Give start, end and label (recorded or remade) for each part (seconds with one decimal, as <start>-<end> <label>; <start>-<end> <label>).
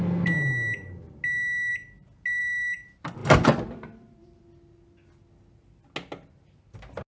0.0-3.2 recorded; 3.2-4.4 remade; 4.4-7.2 recorded